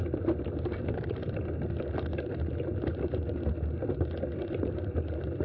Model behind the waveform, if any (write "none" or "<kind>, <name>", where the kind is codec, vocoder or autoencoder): none